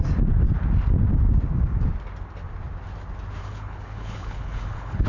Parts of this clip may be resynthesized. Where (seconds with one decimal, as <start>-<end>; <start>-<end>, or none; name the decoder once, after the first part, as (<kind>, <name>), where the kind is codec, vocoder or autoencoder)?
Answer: 3.4-5.1 (codec, HILCodec)